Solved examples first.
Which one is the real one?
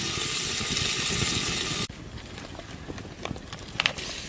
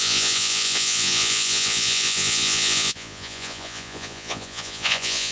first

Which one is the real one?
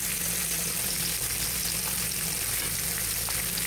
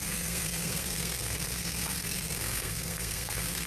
first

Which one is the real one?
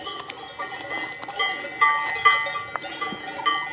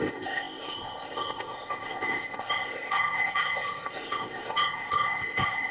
first